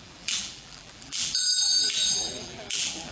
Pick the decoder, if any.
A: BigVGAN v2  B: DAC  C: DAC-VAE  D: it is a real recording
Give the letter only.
A